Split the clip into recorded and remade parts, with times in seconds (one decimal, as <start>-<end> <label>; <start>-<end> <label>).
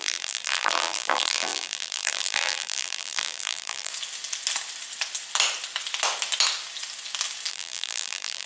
0.0-3.9 remade; 3.9-7.5 recorded; 7.5-8.5 remade